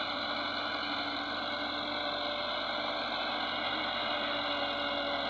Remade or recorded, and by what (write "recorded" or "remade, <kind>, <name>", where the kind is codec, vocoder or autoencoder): recorded